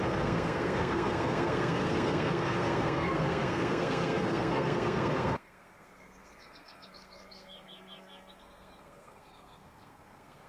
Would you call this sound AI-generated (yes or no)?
yes